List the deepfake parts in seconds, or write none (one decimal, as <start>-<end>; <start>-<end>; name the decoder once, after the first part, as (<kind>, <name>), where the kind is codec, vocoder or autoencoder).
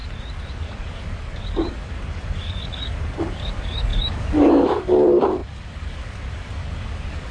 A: 0.5-7.3 (codec, DAC)